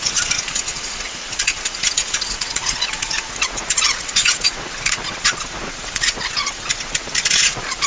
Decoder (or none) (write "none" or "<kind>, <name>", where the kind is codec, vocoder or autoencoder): vocoder, Vocos